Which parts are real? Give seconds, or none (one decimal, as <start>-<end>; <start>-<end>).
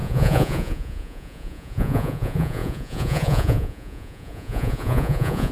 none